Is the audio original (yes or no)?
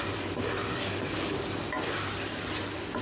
yes